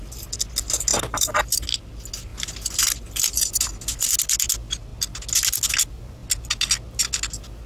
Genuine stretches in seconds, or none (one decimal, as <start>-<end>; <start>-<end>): 0.0-0.9; 1.6-7.7